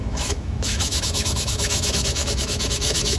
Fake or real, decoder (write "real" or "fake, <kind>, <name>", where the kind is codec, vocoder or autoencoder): fake, autoencoder, DAC-VAE